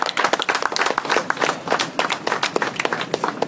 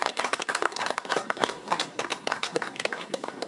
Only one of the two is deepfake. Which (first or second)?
second